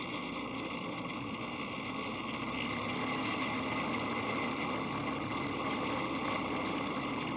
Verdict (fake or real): real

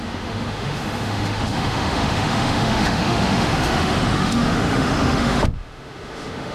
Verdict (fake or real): fake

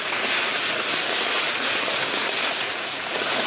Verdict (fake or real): fake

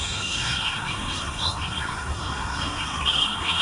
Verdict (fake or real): fake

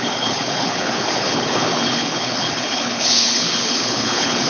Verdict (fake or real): fake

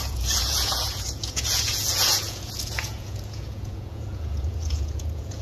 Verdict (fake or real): fake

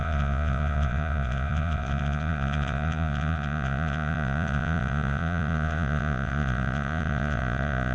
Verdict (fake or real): fake